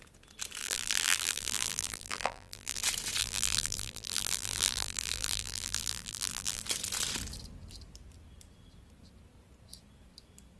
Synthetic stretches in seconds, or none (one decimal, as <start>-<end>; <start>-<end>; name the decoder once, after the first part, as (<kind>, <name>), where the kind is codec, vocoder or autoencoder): 0.6-2.8 (vocoder, BigVGAN v2); 3.2-6.6